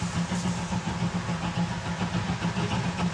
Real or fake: real